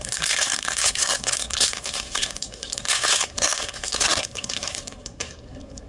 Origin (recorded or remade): remade